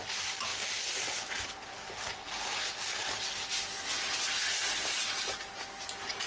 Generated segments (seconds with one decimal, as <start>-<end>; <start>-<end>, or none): none